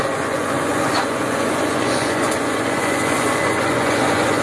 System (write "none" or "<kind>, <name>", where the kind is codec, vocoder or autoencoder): vocoder, Vocos